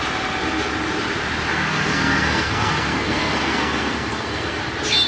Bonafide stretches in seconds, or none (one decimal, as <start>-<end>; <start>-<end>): 0.0-1.5; 4.6-5.1